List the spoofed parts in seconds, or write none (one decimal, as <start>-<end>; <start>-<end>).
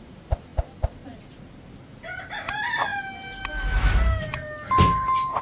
none